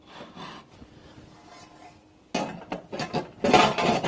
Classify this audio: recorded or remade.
recorded